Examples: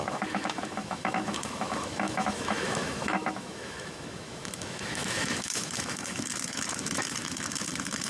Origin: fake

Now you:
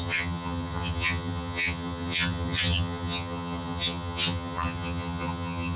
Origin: fake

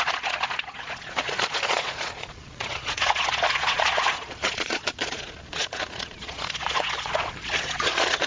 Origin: fake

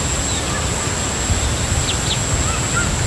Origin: real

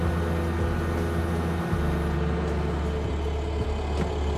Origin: real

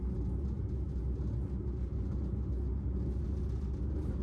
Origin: real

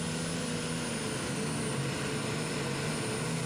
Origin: real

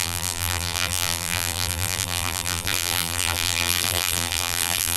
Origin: fake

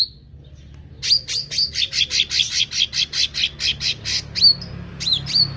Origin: real